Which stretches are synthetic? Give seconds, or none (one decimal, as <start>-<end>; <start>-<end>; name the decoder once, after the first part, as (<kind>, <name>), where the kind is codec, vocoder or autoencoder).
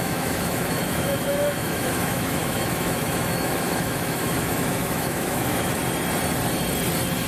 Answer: 0.0-5.8 (autoencoder, DAC-VAE)